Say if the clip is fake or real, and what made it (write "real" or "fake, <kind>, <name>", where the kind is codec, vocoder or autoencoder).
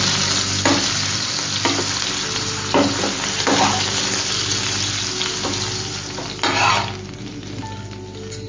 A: real